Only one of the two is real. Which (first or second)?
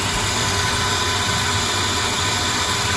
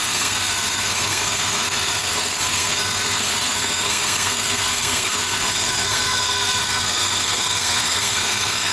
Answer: first